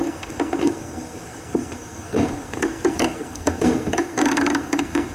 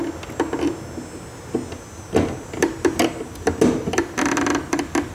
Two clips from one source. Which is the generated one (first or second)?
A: first